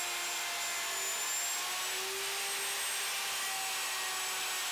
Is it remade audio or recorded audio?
recorded